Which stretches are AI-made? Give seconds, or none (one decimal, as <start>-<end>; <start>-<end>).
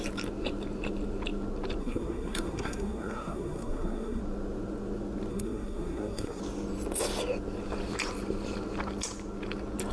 1.8-4.2; 5.3-6.4